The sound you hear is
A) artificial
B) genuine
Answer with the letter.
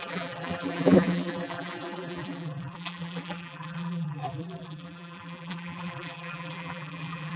A